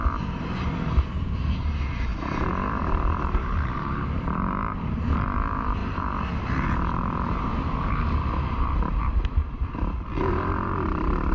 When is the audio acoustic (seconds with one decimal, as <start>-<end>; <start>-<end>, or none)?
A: none